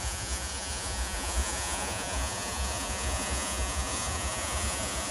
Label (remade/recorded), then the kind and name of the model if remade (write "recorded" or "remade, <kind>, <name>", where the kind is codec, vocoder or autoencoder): remade, vocoder, Vocos